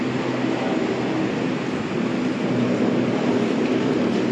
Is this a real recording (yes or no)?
yes